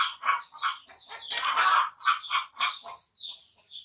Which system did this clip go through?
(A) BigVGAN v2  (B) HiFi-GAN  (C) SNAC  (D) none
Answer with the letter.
D